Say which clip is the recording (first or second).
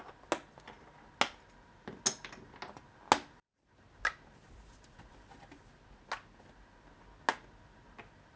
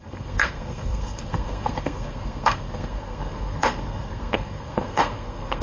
first